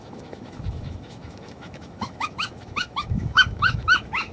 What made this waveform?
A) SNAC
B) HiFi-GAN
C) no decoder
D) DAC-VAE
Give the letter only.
D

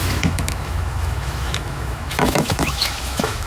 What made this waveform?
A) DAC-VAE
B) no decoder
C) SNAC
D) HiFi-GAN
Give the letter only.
A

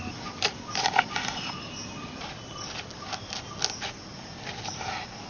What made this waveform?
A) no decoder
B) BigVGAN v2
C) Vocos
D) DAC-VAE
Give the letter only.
A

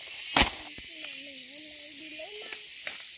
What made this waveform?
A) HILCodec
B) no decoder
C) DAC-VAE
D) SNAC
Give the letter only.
B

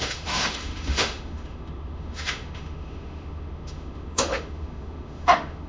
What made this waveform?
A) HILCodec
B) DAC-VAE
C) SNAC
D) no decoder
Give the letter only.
B